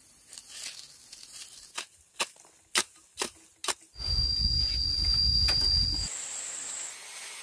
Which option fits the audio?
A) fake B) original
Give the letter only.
B